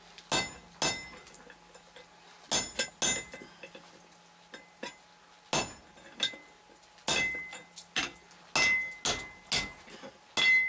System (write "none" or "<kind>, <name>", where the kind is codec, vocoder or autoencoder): none